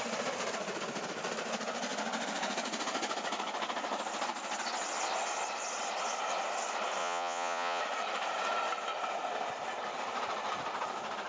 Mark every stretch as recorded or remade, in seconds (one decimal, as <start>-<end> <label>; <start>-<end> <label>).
0.0-7.0 recorded; 7.0-7.8 remade; 7.8-11.3 recorded